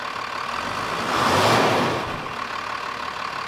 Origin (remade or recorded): recorded